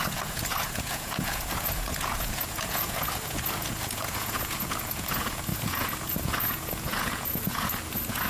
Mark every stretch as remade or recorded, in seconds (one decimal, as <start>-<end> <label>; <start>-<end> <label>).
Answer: 0.0-8.3 remade